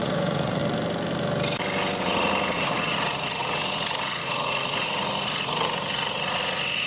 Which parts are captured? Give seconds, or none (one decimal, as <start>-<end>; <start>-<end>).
0.6-2.0